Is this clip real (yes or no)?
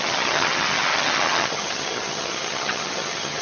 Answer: no